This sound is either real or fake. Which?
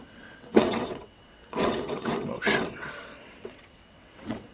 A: fake